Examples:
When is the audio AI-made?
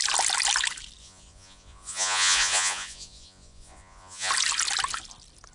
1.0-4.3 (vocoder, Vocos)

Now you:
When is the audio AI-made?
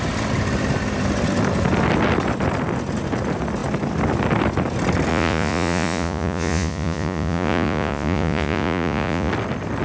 5.1-9.3 (vocoder, Vocos)